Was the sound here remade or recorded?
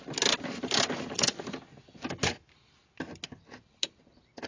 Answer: recorded